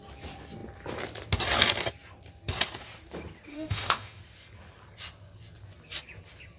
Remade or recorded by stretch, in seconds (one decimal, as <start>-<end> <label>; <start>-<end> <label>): 0.0-3.5 recorded; 3.5-4.2 remade; 4.2-6.6 recorded